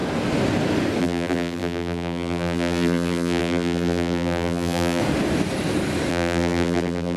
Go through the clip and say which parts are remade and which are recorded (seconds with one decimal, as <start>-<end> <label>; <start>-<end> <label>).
0.0-1.0 recorded; 1.0-5.0 remade; 5.0-6.1 recorded; 6.1-7.2 remade

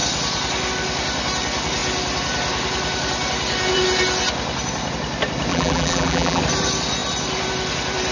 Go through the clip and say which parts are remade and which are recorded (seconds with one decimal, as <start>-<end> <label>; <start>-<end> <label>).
0.0-5.5 recorded; 5.5-6.4 remade; 6.4-8.1 recorded

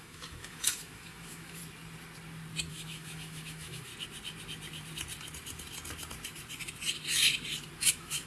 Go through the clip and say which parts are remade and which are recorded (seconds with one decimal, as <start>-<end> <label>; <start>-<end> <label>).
0.0-1.6 remade; 1.6-2.7 recorded; 2.7-3.9 remade; 3.9-7.9 recorded; 7.9-8.3 remade

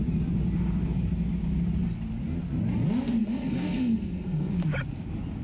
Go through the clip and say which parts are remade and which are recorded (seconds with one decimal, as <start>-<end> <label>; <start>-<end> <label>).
0.0-3.2 recorded; 3.2-4.5 remade; 4.5-5.4 recorded

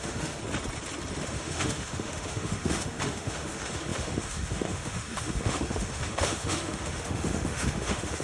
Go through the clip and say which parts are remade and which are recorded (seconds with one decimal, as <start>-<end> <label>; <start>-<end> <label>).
0.0-0.4 remade; 0.4-1.2 recorded; 1.2-8.2 remade

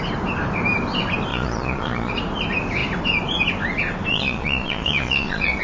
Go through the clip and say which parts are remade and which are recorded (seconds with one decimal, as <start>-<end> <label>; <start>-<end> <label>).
0.0-1.3 recorded; 1.3-2.1 remade; 2.1-4.1 recorded; 4.1-5.6 remade

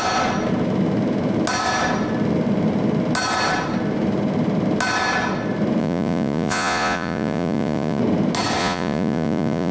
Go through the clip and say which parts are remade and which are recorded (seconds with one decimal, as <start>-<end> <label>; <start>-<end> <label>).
0.0-5.8 recorded; 5.8-8.0 remade; 8.0-8.6 recorded; 8.6-9.7 remade